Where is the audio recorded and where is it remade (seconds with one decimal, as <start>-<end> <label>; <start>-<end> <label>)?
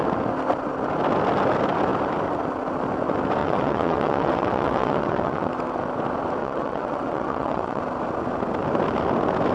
0.0-3.4 recorded; 3.4-5.5 remade; 5.5-6.4 recorded; 6.4-7.8 remade; 7.8-9.5 recorded